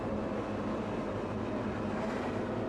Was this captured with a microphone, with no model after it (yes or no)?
yes